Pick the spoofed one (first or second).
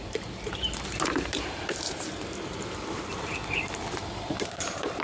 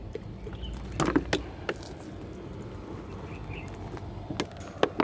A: first